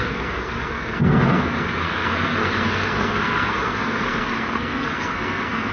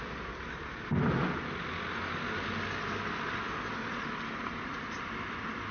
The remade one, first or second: first